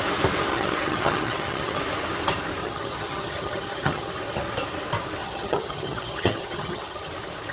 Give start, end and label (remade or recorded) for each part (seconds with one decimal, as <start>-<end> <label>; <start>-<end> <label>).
0.0-0.5 recorded; 0.5-1.8 remade; 1.8-2.6 recorded; 2.6-4.1 remade; 4.1-5.2 recorded; 5.2-7.1 remade; 7.1-7.5 recorded